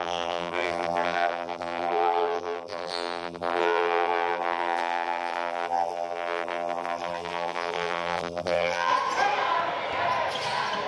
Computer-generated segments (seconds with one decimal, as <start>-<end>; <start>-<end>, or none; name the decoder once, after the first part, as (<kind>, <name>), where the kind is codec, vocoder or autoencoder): 0.0-8.9 (vocoder, BigVGAN v2)